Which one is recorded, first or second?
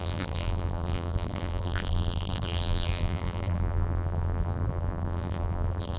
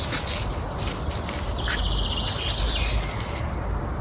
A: second